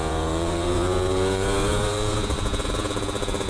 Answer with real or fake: fake